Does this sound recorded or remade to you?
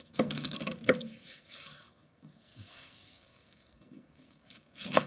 remade